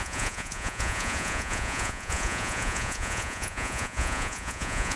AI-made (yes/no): yes